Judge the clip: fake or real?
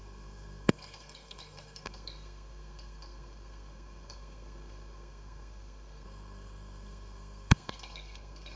fake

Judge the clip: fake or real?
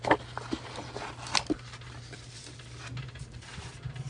real